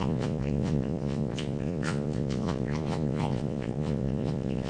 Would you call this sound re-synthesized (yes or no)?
yes